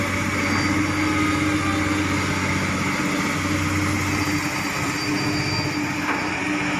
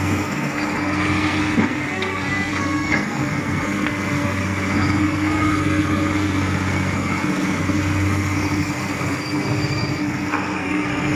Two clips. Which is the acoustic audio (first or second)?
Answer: first